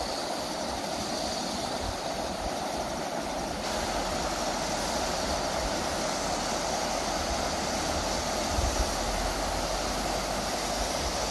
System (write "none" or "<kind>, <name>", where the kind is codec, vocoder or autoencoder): none